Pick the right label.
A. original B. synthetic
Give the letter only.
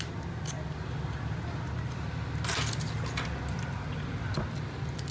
A